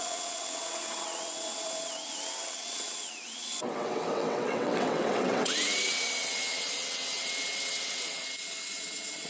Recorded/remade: remade